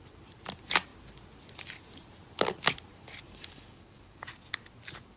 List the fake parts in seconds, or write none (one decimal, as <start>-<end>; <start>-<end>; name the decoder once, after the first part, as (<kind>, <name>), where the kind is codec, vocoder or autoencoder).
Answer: 2.9-4.2 (codec, DAC)